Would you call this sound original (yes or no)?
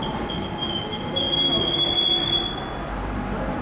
yes